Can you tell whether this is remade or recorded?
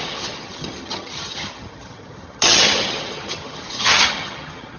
remade